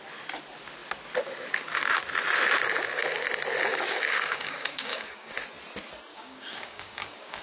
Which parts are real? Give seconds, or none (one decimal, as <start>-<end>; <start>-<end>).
0.0-3.7; 5.3-6.1